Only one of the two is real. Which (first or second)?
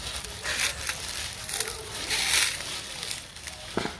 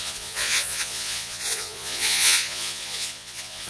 first